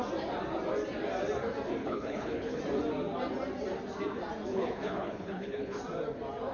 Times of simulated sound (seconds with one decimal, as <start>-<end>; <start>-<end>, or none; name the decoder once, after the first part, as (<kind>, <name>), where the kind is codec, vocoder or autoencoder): 1.8-2.6 (codec, HILCodec); 4.5-5.8